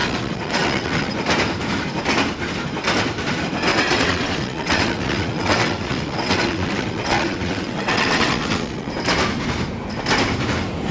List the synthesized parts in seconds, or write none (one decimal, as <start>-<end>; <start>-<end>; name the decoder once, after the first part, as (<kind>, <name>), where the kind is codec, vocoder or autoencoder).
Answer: 0.0-1.1 (vocoder, WaveNeXt); 3.7-8.9